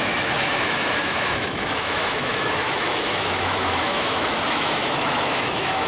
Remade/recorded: remade